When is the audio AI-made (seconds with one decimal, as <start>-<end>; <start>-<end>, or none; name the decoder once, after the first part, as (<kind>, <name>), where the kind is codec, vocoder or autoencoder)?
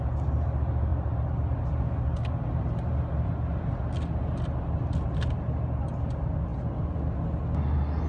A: none